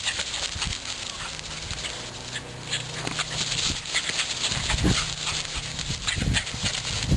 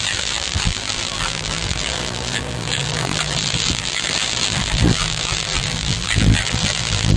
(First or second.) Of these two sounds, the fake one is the second